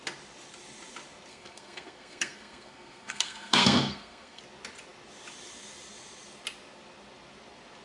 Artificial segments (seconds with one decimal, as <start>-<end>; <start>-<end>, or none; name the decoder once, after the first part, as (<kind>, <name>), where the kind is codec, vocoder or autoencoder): 1.3-4.4 (codec, SNAC)